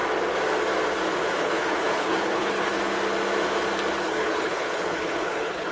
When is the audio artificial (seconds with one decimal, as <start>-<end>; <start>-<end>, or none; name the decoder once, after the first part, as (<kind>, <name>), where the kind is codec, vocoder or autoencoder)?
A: 1.4-2.7 (codec, HILCodec); 4.0-5.7